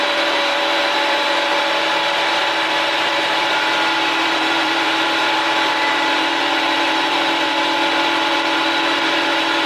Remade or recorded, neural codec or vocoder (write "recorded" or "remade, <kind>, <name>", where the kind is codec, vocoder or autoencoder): remade, vocoder, BigVGAN v2